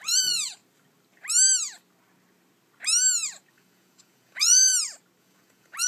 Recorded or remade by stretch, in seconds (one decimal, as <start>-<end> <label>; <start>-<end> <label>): 0.0-0.6 remade; 0.6-3.5 recorded; 3.5-4.7 remade; 4.7-5.2 recorded; 5.2-5.9 remade

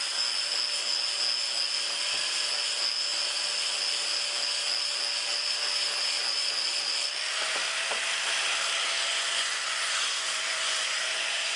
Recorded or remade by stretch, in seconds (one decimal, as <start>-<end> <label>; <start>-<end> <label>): 0.0-9.1 recorded; 9.1-11.6 remade

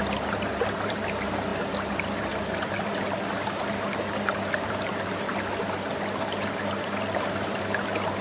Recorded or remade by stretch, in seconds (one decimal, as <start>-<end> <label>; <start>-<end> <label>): 0.0-8.2 recorded

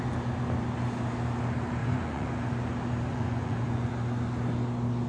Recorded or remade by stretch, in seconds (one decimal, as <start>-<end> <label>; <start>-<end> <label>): 0.0-1.8 recorded; 1.8-2.5 remade; 2.5-3.1 recorded; 3.1-3.9 remade; 3.9-5.1 recorded

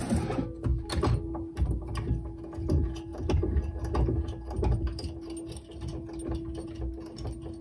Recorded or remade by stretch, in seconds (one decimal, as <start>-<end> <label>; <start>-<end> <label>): 0.0-7.6 recorded

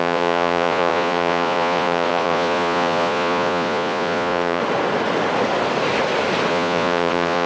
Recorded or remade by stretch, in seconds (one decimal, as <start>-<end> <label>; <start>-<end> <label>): 0.0-4.6 remade; 4.6-6.5 recorded; 6.5-7.5 remade